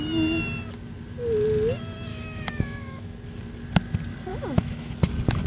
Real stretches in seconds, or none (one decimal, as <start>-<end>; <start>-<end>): 0.0-2.1; 3.1-4.3; 4.9-5.5